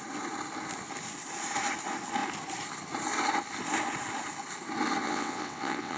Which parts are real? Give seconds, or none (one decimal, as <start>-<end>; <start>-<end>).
0.0-5.0